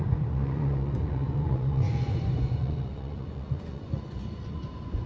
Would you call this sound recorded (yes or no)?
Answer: no